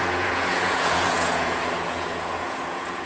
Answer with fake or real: fake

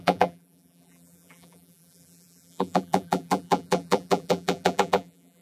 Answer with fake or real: fake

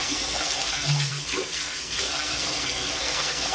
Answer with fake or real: fake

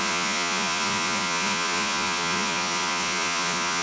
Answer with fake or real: fake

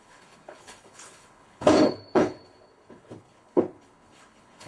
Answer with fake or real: fake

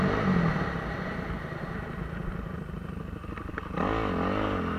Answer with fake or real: real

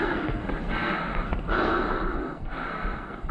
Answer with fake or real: fake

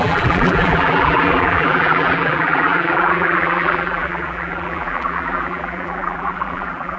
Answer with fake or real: fake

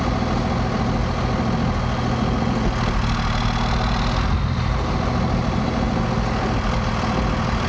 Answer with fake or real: real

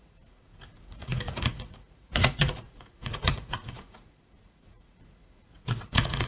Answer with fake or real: fake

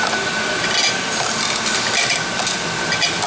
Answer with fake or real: real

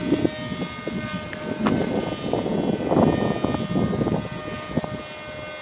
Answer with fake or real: real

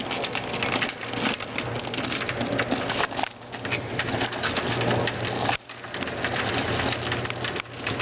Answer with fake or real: real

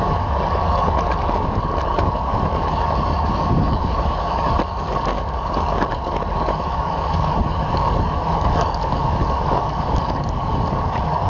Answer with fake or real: fake